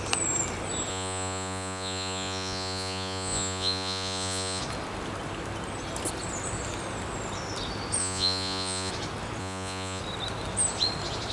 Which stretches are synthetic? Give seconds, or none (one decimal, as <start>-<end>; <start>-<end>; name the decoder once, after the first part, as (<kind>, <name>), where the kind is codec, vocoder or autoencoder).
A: 0.9-4.6 (vocoder, Vocos); 8.0-8.9; 9.4-10.0